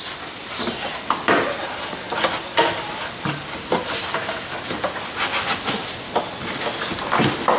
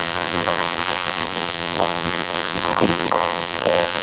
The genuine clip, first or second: first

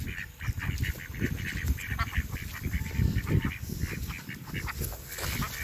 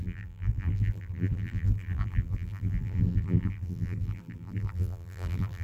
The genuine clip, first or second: first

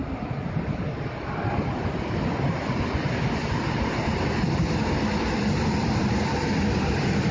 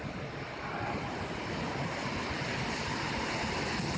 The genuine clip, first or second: second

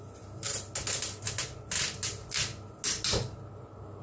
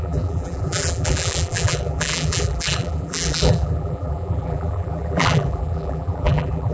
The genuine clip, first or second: first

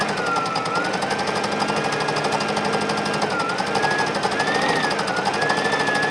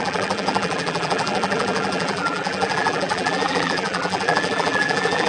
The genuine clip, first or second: first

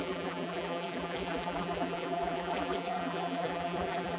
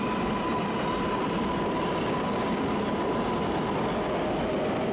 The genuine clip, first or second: second